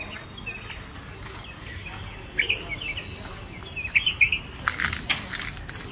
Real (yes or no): yes